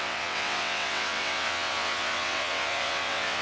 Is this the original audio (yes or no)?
no